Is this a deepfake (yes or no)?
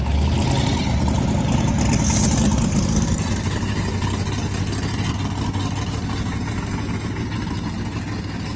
no